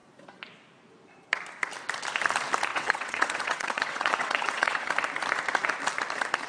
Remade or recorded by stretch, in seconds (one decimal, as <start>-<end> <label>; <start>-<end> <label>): 0.0-2.7 recorded; 2.7-4.9 remade; 4.9-6.5 recorded